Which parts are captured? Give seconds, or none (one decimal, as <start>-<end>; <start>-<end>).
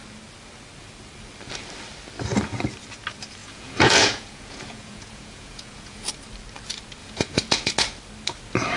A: 0.0-3.4; 6.1-7.0; 7.7-8.8